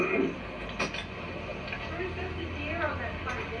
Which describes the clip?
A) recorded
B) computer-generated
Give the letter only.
A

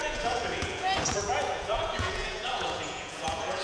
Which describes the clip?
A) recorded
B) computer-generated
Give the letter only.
B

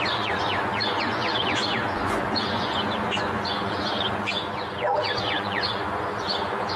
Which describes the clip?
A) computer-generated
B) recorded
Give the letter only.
A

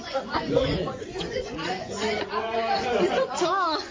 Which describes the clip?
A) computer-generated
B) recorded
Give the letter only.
A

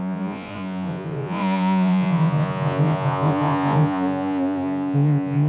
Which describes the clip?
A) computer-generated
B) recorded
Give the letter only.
A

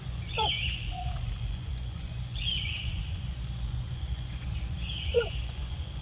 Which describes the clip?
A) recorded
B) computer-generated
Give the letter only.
B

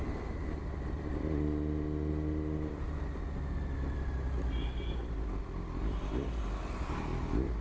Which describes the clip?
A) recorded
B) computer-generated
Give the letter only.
A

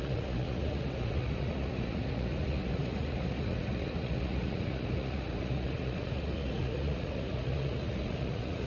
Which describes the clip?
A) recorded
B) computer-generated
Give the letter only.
B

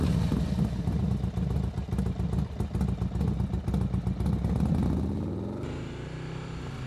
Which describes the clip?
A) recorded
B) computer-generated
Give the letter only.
A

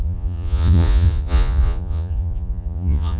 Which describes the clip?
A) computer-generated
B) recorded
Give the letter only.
A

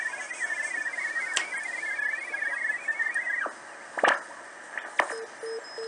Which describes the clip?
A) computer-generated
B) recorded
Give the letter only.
B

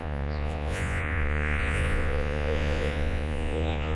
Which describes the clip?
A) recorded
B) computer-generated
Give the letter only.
B